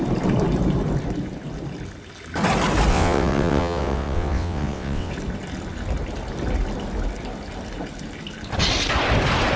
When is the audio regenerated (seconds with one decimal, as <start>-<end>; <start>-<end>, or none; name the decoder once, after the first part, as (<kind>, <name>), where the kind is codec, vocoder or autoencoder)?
2.9-5.1 (vocoder, WaveNeXt)